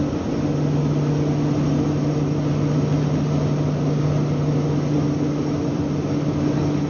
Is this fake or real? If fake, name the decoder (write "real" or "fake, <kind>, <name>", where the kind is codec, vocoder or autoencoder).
real